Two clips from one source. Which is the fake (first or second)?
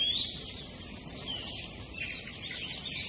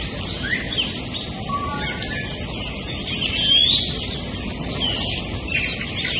first